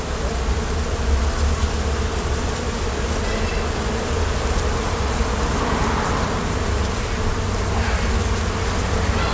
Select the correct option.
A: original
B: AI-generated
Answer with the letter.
A